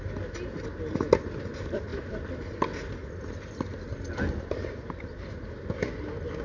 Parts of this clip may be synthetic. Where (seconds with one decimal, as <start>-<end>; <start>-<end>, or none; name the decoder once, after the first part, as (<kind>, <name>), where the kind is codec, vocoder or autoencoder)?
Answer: none